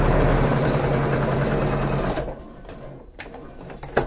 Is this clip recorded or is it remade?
recorded